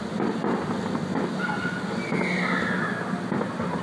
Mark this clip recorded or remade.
recorded